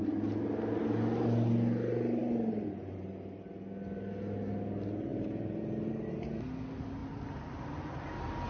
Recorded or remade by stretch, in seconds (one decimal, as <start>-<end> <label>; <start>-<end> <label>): 0.0-8.5 recorded